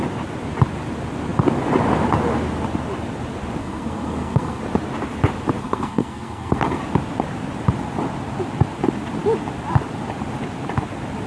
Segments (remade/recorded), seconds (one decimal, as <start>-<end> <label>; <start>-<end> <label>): 0.0-3.6 recorded; 3.6-4.6 remade; 4.6-5.6 recorded; 5.6-6.8 remade; 6.8-11.3 recorded